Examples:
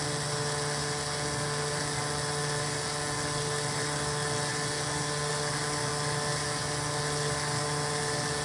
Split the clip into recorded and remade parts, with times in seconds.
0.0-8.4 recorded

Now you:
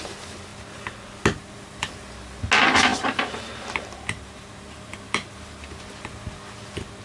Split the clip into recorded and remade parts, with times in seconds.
0.0-2.9 recorded; 2.9-5.8 remade; 5.8-7.0 recorded

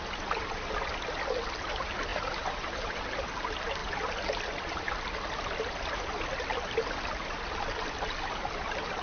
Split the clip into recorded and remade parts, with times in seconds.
0.0-2.1 recorded; 2.1-3.0 remade; 3.0-9.0 recorded

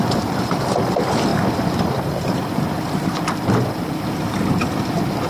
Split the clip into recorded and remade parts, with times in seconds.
0.0-5.3 remade

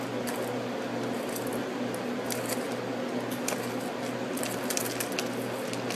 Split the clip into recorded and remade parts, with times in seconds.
0.0-6.0 recorded